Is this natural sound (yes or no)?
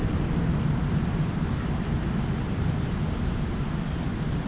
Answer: yes